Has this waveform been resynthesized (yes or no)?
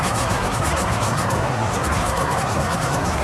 yes